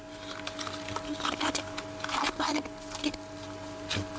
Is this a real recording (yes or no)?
yes